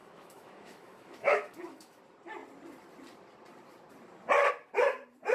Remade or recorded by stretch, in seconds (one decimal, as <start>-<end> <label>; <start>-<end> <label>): 0.0-2.0 remade; 2.0-5.3 recorded